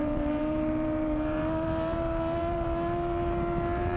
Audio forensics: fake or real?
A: fake